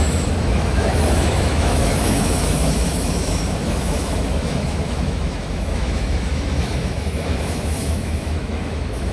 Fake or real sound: fake